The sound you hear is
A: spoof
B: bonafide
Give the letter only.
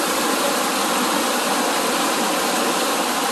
B